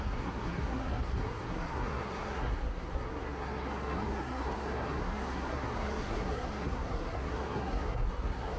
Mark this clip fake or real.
fake